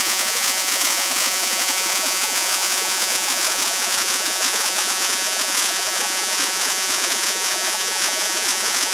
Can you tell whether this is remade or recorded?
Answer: remade